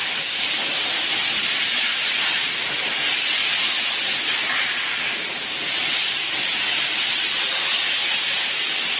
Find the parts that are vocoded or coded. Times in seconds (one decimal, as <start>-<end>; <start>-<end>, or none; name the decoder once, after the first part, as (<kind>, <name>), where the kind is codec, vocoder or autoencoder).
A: none